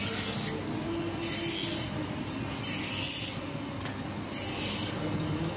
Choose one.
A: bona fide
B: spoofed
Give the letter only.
A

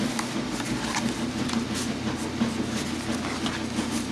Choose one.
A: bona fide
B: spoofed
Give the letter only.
A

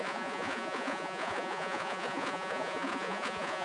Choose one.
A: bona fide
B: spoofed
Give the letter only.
B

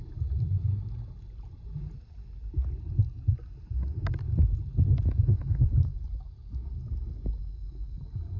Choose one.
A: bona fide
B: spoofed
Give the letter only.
A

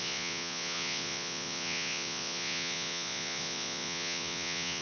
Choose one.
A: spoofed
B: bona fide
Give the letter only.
A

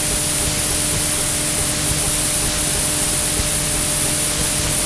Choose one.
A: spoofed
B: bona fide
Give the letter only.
B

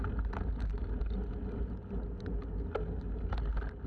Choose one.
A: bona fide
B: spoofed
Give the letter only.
A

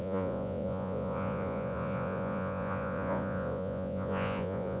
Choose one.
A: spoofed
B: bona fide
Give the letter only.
A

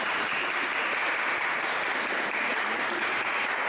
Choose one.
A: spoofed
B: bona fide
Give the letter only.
A